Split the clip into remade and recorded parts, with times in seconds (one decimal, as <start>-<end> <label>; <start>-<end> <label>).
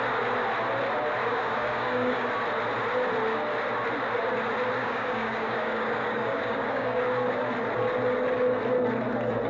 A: 0.0-1.2 recorded; 1.2-2.3 remade; 2.3-4.8 recorded; 4.8-7.0 remade; 7.0-9.5 recorded